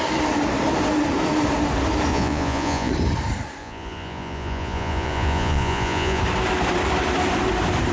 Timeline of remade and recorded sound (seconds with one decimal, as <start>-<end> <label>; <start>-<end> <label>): 0.0-2.1 recorded; 2.1-2.9 remade; 2.9-3.6 recorded; 3.6-6.2 remade; 6.2-7.9 recorded